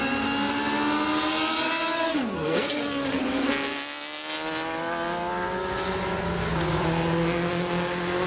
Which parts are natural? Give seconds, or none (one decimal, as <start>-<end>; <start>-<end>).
0.0-2.1; 3.5-8.3